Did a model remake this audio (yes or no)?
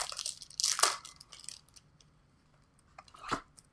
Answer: no